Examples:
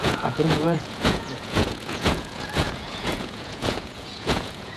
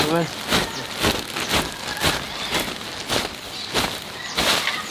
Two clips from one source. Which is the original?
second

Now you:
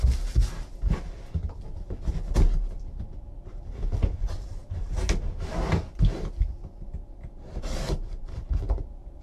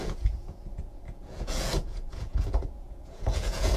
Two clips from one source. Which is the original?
first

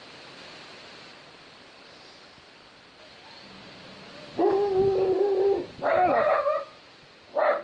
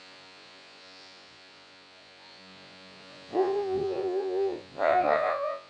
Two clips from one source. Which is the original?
first